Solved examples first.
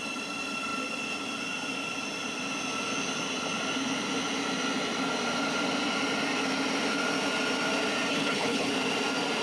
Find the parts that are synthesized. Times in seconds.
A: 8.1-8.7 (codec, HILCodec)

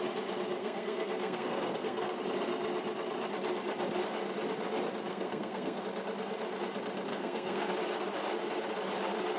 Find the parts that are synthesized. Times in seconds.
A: 0.6-2.2 (codec, SNAC); 5.1-5.8; 7.1-7.7

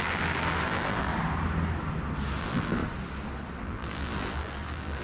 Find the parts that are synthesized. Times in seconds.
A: 0.0-1.1 (vocoder, BigVGAN v2); 2.4-2.8; 3.6-5.0

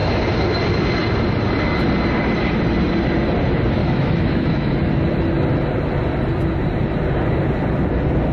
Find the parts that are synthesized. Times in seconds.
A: 3.8-4.7 (autoencoder, DAC-VAE)

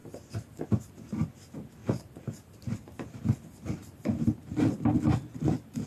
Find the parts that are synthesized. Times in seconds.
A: 0.0-0.9 (vocoder, BigVGAN v2); 1.8-3.2; 3.8-4.6

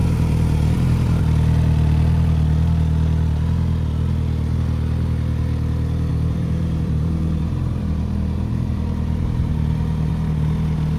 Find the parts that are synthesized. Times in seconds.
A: 0.0-1.2 (vocoder, BigVGAN v2); 6.1-10.1

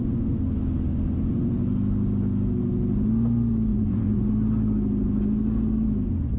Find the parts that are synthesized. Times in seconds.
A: 3.7-4.3 (vocoder, Vocos)